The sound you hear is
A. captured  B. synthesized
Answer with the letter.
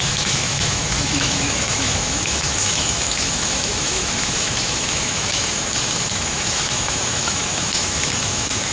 B